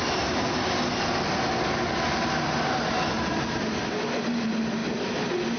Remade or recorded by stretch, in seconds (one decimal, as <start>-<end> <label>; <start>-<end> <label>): 0.0-5.6 recorded